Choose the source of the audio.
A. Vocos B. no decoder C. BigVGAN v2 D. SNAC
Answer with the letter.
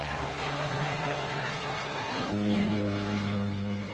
D